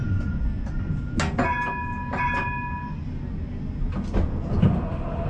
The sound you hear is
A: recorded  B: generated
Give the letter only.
A